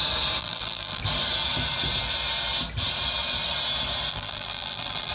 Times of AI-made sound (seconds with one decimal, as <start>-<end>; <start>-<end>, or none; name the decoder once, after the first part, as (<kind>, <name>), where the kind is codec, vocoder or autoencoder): 0.4-1.0 (vocoder, BigVGAN v2); 4.1-5.1